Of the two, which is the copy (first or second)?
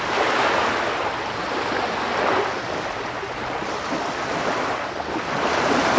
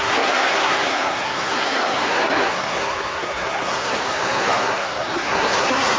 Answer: second